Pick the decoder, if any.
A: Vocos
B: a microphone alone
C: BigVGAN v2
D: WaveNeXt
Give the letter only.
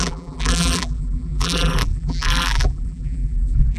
C